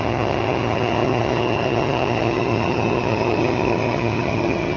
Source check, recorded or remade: remade